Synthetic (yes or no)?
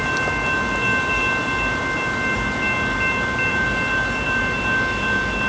no